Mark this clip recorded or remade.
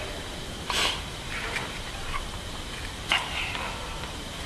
remade